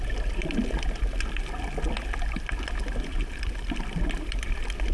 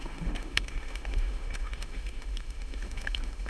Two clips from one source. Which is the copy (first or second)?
second